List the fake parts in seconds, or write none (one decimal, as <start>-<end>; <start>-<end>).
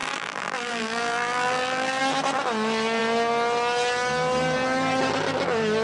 0.0-2.0